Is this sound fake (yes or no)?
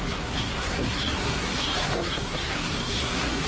yes